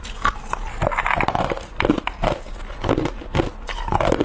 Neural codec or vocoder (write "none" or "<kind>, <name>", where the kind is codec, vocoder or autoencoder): none